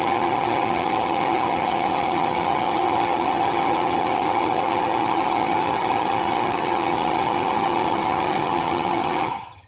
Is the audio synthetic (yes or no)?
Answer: yes